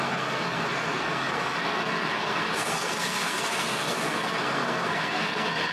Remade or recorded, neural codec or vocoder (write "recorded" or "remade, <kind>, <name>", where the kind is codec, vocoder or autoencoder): remade, codec, SNAC